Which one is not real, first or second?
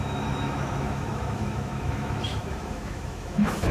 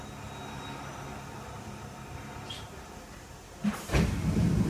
first